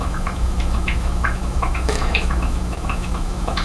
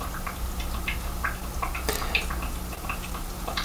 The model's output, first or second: first